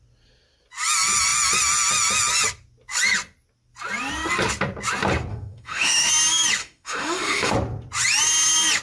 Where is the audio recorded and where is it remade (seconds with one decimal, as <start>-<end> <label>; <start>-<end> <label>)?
0.0-5.3 recorded; 5.3-6.1 remade; 6.1-6.6 recorded; 6.6-7.5 remade; 7.5-8.8 recorded